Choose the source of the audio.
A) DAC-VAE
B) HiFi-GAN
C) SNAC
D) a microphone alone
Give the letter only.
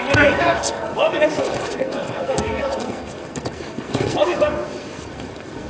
C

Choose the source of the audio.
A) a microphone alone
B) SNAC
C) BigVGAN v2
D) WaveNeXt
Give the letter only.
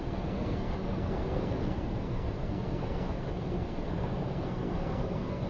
B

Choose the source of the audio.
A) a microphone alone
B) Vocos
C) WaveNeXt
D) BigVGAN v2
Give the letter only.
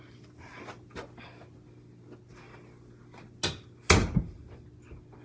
A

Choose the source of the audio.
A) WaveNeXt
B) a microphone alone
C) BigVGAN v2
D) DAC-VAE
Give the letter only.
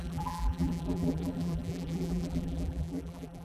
C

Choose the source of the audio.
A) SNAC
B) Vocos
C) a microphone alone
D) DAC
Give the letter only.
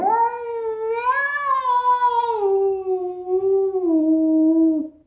C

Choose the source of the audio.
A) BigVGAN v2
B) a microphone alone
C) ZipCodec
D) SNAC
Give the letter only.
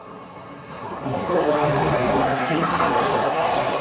D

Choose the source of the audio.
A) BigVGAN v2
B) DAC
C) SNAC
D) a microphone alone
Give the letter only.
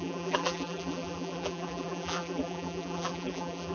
A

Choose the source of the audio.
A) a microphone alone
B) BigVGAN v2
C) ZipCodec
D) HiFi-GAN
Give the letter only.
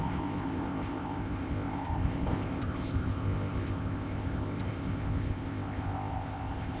C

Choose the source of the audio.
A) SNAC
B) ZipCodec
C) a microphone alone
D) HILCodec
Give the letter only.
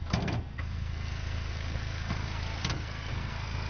A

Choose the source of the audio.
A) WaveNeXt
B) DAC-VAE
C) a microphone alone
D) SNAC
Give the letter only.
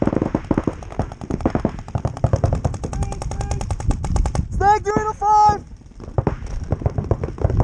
C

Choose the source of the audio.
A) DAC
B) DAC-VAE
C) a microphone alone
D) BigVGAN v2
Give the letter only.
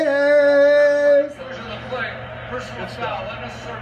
C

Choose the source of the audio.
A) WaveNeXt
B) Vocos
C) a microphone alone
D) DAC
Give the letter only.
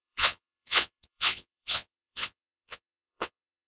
A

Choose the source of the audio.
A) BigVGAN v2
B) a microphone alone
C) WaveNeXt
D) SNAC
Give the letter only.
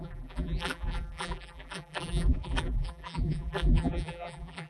A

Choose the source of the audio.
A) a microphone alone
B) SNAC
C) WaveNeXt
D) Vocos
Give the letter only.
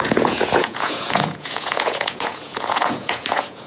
D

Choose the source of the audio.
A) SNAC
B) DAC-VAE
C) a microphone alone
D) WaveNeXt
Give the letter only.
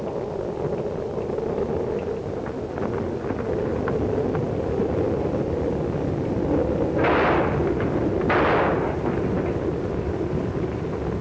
C